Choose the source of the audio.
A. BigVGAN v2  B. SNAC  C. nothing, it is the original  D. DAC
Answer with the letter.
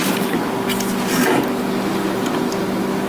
C